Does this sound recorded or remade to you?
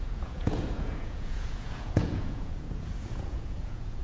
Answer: remade